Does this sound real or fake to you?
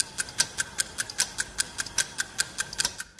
real